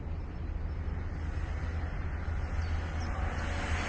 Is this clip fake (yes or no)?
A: no